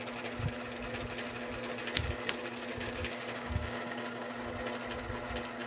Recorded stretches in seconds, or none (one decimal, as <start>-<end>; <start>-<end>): 0.0-2.7; 4.3-5.7